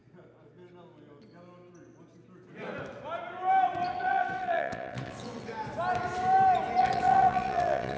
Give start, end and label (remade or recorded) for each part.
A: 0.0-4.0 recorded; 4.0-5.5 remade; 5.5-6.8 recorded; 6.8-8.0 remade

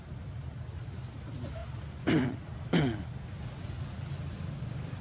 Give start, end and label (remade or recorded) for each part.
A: 0.0-5.0 recorded

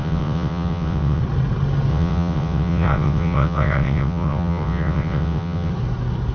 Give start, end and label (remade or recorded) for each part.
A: 0.0-1.2 remade; 1.2-1.9 recorded; 1.9-5.7 remade; 5.7-6.3 recorded

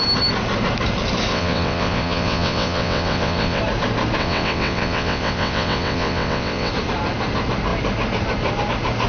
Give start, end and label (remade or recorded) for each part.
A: 0.0-1.3 recorded; 1.3-3.6 remade; 3.6-4.2 recorded; 4.2-6.7 remade; 6.7-9.1 recorded

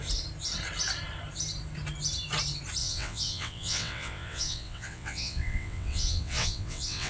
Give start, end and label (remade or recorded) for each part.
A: 0.0-2.8 recorded; 2.8-7.1 remade

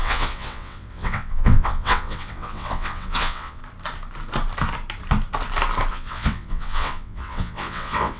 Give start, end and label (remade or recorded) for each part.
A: 0.0-3.6 remade; 3.6-5.9 recorded; 5.9-8.2 remade

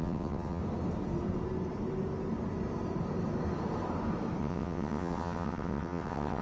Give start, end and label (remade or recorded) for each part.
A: 0.0-0.6 remade; 0.6-4.4 recorded; 4.4-6.4 remade